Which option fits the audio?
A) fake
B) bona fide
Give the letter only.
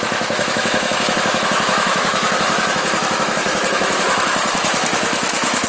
A